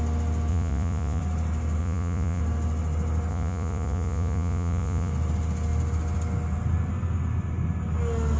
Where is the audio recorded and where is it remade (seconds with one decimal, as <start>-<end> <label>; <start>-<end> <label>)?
0.0-0.5 recorded; 0.5-1.2 remade; 1.2-1.8 recorded; 1.8-2.4 remade; 2.4-3.3 recorded; 3.3-5.1 remade; 5.1-8.4 recorded